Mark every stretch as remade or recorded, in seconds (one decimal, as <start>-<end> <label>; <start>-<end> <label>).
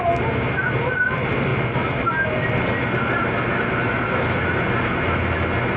0.0-5.8 recorded